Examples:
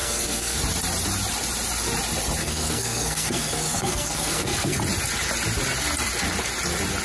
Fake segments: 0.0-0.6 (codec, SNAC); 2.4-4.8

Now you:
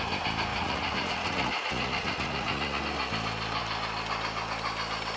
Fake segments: 0.5-2.8 (vocoder, Vocos)

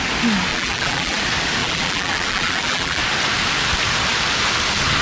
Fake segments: 0.5-1.2 (vocoder, BigVGAN v2); 1.6-3.0

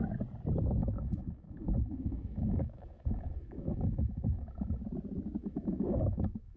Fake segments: 0.8-4.8 (autoencoder, DAC-VAE); 5.4-6.6

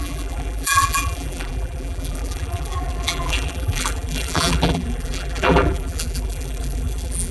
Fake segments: 0.0-7.3 (vocoder, BigVGAN v2)

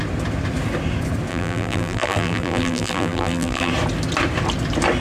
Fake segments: 1.3-3.7 (vocoder, BigVGAN v2)

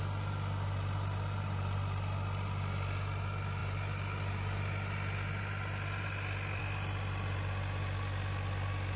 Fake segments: none

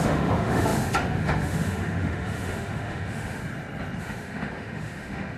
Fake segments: 0.0-3.4 (autoencoder, DAC-VAE); 4.0-5.4